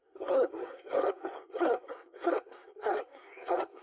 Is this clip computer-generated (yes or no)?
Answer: yes